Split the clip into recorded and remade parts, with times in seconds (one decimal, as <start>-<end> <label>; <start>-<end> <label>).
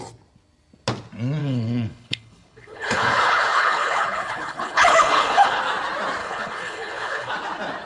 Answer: 0.0-1.4 recorded; 1.4-5.6 remade; 5.6-6.2 recorded; 6.2-7.3 remade; 7.3-7.9 recorded